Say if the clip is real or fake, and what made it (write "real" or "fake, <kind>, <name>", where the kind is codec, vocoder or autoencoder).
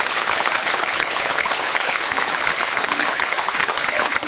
fake, codec, HILCodec